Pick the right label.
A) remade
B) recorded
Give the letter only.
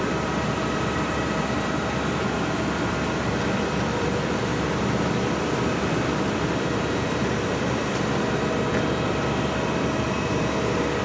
A